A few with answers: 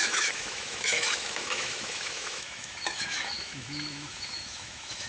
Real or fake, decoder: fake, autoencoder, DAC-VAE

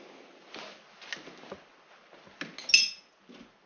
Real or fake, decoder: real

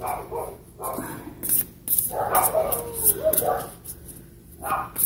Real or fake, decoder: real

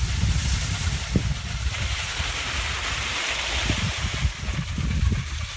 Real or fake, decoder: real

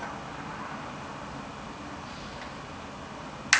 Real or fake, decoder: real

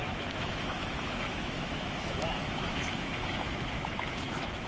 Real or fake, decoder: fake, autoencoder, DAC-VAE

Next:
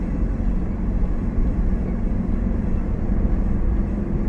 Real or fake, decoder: real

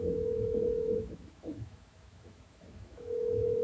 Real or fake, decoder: fake, autoencoder, DAC-VAE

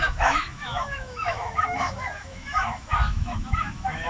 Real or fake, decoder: fake, autoencoder, DAC-VAE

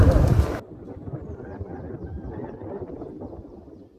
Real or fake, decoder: real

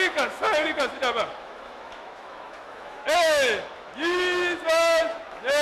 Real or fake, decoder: fake, autoencoder, DAC-VAE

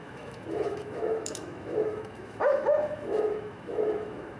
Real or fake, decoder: fake, autoencoder, DAC-VAE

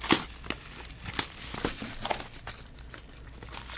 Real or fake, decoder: real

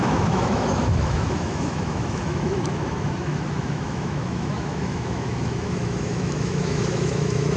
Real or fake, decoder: fake, autoencoder, DAC-VAE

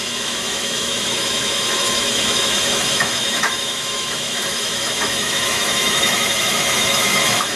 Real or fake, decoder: fake, autoencoder, DAC-VAE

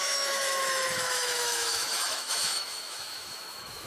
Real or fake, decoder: fake, autoencoder, DAC-VAE